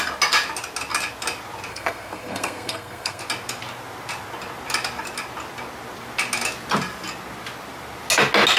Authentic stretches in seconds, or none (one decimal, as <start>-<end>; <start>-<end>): 0.0-1.7; 3.2-8.6